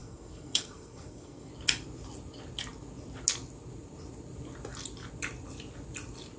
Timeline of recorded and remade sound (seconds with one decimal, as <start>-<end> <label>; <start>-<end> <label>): 0.0-1.5 remade; 1.5-6.4 recorded

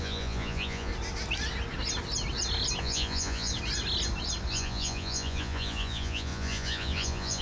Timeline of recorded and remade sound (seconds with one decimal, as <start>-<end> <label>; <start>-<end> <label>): 0.0-0.9 remade; 0.9-2.8 recorded; 2.8-3.5 remade; 3.5-4.5 recorded; 4.5-7.4 remade

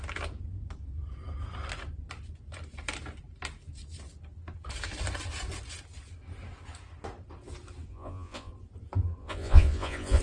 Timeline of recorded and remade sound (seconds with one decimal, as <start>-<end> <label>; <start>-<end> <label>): 0.0-7.9 recorded; 7.9-8.5 remade; 8.5-9.2 recorded; 9.2-10.2 remade

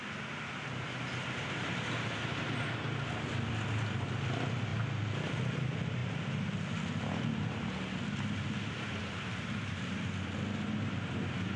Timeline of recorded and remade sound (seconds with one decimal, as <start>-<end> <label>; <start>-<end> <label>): 0.0-11.6 recorded

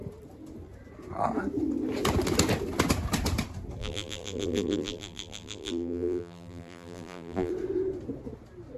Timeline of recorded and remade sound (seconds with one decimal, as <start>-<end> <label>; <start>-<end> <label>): 0.0-3.8 recorded; 3.8-7.5 remade; 7.5-8.8 recorded

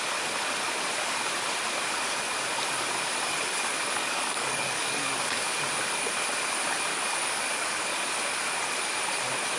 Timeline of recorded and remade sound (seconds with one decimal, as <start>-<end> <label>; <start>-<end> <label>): 0.0-4.0 recorded; 4.0-5.6 remade; 5.6-6.9 recorded; 6.9-7.9 remade; 7.9-9.6 recorded

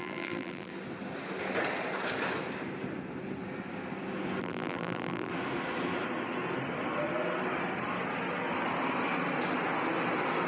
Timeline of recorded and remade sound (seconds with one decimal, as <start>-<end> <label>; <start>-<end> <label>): 0.0-0.7 remade; 0.7-4.4 recorded; 4.4-5.3 remade; 5.3-10.5 recorded

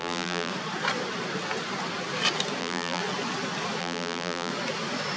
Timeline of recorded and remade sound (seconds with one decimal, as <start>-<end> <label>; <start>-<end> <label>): 0.0-0.5 remade; 0.5-2.6 recorded; 2.6-3.0 remade; 3.0-3.8 recorded; 3.8-4.5 remade; 4.5-5.2 recorded